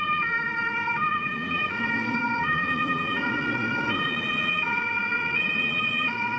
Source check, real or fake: fake